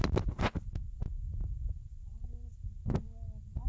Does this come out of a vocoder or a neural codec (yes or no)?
no